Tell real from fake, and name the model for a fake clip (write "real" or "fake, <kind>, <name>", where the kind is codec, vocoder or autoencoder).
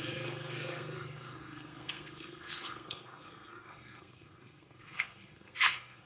fake, codec, SNAC